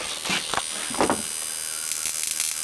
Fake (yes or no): no